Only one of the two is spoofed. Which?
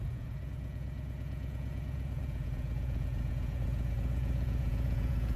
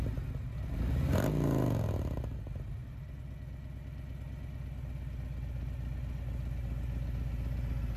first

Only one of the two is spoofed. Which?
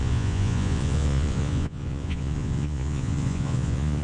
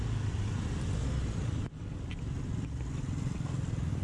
first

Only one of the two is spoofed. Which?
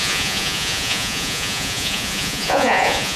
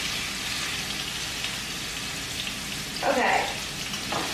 first